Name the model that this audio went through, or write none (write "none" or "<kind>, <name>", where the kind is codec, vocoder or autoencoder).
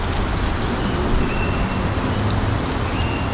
none